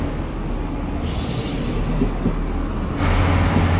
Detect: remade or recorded recorded